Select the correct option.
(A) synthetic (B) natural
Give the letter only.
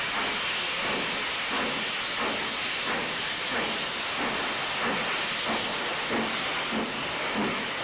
B